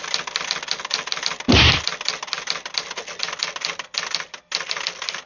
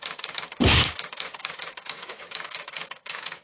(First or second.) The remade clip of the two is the second